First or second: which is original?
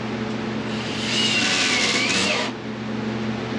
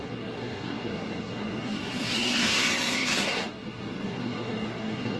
first